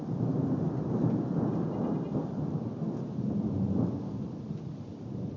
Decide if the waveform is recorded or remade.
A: recorded